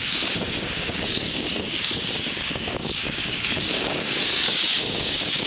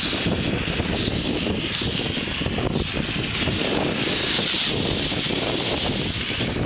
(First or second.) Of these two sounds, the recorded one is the second